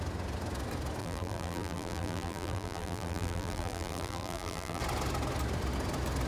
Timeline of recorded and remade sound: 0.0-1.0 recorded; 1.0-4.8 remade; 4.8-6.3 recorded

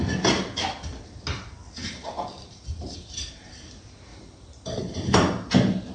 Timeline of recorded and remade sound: 0.0-1.8 recorded; 1.8-3.5 remade; 3.5-4.1 recorded; 4.1-4.8 remade; 4.8-5.9 recorded